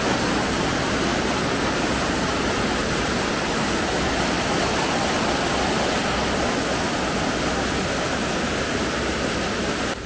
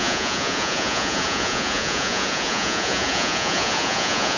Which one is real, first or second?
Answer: first